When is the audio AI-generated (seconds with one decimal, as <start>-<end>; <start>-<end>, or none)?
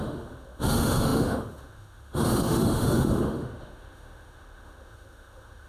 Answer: 0.0-5.7